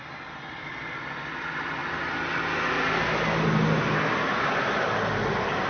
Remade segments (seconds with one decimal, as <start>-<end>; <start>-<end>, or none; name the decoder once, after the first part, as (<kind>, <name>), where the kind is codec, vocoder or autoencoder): none